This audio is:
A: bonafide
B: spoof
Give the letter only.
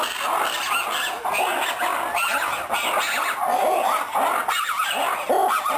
A